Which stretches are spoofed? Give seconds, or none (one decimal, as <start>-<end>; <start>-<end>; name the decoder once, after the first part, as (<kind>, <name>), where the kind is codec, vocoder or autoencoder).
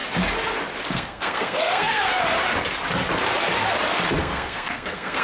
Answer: 0.9-2.1 (codec, SNAC); 4.2-5.2